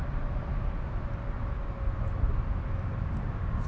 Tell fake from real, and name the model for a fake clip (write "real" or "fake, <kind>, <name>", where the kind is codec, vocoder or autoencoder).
real